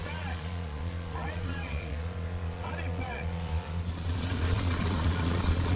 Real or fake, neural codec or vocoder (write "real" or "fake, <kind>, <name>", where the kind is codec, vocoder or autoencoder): fake, vocoder, Vocos